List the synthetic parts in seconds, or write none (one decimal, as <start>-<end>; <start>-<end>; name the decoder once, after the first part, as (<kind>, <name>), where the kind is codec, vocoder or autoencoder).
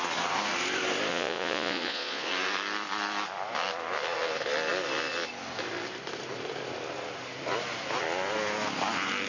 1.1-2.3 (vocoder, Vocos)